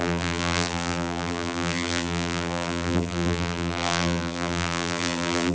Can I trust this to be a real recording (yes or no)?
no